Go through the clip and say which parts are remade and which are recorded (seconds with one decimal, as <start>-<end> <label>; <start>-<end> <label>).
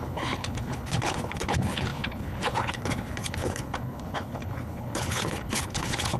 0.0-6.2 remade